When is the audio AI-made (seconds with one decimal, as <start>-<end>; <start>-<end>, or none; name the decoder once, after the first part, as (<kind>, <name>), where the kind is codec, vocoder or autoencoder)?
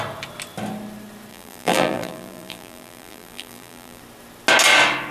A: 1.3-4.0 (vocoder, BigVGAN v2)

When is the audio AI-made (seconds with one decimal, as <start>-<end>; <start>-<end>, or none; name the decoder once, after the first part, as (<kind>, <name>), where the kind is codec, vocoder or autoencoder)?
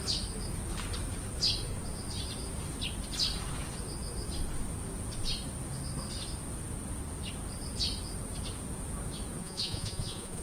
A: 9.4-10.4 (vocoder, Vocos)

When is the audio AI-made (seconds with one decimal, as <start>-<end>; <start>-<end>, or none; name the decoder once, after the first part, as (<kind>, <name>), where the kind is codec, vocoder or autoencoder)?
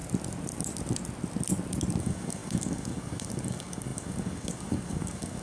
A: 2.0-5.4 (codec, DAC)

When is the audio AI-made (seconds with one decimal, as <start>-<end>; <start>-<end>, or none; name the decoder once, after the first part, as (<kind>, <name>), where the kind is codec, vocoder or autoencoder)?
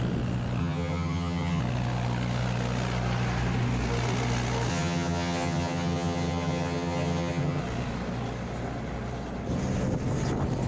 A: 0.6-1.6 (vocoder, HiFi-GAN); 4.7-7.6